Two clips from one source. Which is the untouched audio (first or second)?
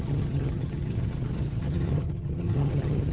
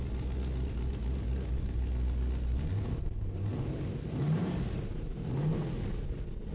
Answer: second